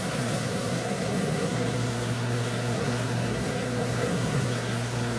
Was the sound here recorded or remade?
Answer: remade